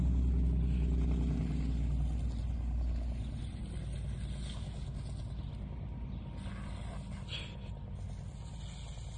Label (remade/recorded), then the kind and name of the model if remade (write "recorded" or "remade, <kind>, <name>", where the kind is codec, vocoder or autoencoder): recorded